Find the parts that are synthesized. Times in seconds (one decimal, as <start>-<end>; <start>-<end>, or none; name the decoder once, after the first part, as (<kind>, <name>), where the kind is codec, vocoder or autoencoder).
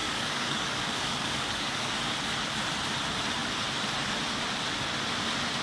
0.0-1.9 (codec, DAC)